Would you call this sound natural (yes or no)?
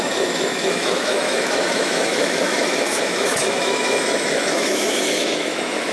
no